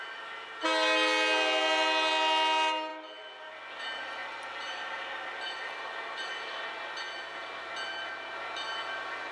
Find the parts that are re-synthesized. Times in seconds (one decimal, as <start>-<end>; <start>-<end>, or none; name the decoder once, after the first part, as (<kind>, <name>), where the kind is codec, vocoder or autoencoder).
4.2-6.2 (vocoder, BigVGAN v2)